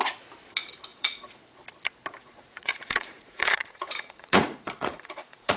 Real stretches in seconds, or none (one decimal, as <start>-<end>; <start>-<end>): 0.0-0.9; 1.4-2.2

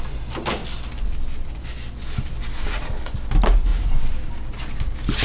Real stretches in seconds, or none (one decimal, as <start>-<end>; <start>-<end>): 0.0-3.7; 4.3-5.2

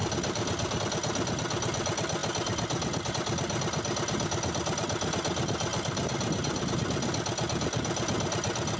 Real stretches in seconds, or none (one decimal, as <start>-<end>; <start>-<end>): 0.8-5.7; 6.7-8.8

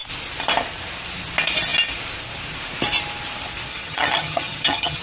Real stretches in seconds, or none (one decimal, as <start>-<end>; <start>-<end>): 0.0-3.7

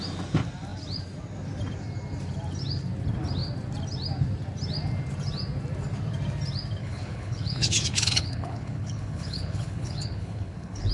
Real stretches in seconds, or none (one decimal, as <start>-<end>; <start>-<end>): 0.0-6.8

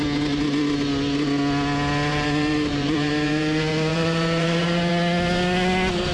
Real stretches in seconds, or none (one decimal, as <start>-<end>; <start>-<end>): 0.0-2.1; 4.9-6.1